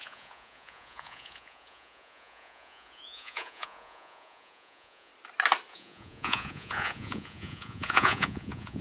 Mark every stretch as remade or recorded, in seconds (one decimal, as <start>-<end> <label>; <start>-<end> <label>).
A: 0.0-5.1 remade; 5.1-5.7 recorded; 5.7-8.8 remade